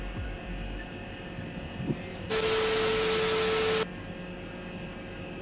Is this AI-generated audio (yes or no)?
no